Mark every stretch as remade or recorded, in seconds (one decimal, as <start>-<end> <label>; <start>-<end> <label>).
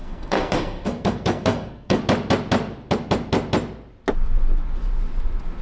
0.0-2.0 remade; 2.0-5.6 recorded